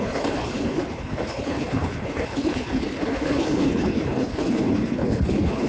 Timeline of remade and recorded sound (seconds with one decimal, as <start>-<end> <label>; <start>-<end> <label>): 0.0-5.7 remade